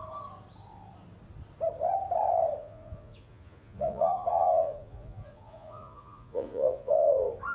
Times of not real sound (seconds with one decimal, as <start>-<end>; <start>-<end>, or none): 2.6-7.1